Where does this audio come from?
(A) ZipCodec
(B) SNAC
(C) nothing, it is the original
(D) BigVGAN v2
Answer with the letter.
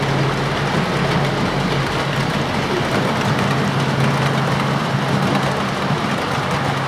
C